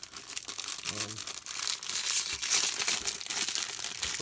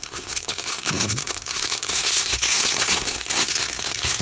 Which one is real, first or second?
first